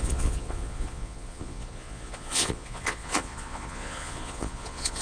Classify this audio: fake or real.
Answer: fake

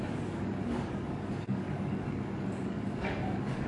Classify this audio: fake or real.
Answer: fake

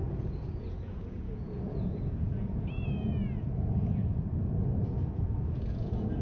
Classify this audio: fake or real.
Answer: fake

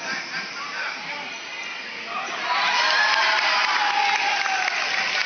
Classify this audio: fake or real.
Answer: real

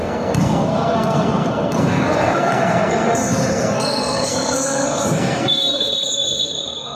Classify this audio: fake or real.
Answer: fake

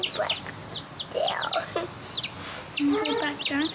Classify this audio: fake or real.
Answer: real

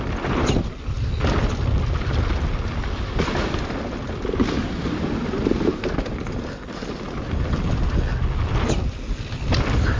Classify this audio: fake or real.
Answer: real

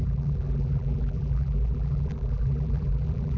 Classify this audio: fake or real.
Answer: fake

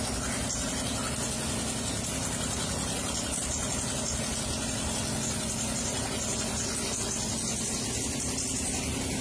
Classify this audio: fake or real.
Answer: real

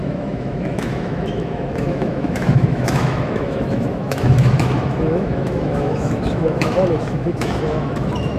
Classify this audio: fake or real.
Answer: fake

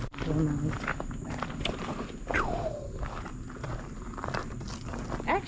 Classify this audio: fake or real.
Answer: real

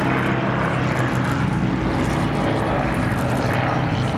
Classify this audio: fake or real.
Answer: real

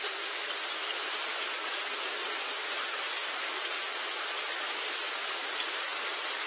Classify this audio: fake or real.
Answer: real